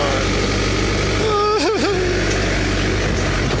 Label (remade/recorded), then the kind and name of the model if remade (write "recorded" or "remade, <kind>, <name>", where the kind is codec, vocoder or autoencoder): recorded